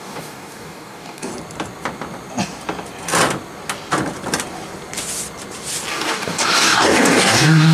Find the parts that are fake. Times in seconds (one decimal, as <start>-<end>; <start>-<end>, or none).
0.0-1.3; 5.9-7.7

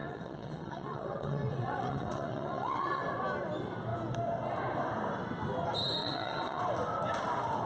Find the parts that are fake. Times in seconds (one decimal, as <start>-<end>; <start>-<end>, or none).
0.0-3.0; 6.0-6.6

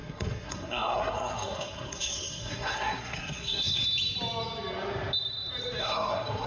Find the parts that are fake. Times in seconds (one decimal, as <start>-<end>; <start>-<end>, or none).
0.0-3.8; 5.8-6.5